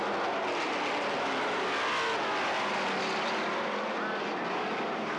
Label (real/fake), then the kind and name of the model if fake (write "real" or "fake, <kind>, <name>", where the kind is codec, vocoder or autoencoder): real